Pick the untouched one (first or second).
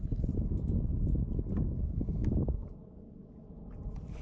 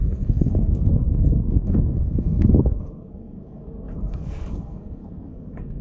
first